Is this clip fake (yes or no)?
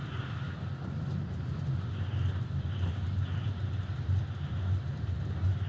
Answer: no